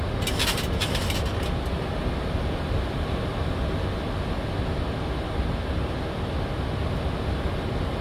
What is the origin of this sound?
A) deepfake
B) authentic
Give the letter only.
B